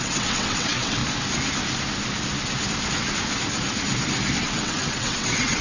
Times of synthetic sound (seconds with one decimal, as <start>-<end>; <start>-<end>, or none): 0.0-1.0; 4.4-5.6